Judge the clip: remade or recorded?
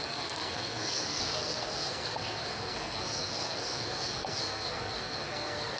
remade